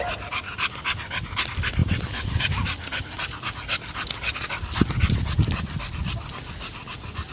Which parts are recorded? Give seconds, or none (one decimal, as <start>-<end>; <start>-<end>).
0.0-7.3